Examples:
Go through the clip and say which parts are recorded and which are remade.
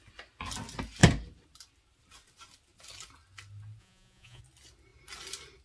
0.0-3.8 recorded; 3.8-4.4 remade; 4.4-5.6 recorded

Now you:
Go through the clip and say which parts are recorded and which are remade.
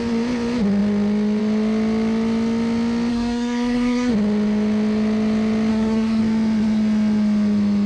0.0-3.1 recorded; 3.1-4.1 remade; 4.1-5.7 recorded; 5.7-6.2 remade; 6.2-7.9 recorded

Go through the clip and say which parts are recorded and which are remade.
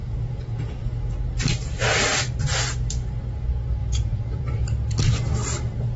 0.0-0.8 remade; 0.8-3.8 recorded; 3.8-4.4 remade; 4.4-6.0 recorded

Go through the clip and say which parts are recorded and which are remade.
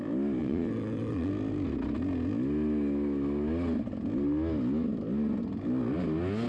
0.0-0.4 recorded; 0.4-1.3 remade; 1.3-6.5 recorded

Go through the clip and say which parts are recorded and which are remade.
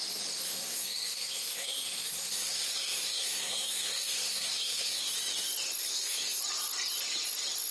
0.0-0.5 recorded; 0.5-5.1 remade; 5.1-5.8 recorded; 5.8-6.4 remade; 6.4-7.7 recorded